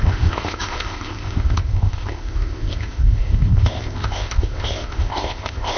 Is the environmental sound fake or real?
fake